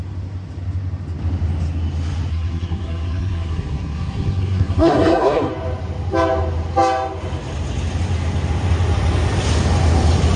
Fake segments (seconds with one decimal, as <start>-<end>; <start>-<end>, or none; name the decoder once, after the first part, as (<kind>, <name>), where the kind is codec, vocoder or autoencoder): 2.3-5.5 (codec, SNAC)